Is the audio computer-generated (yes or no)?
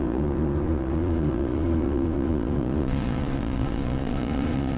yes